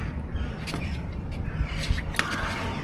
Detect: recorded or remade recorded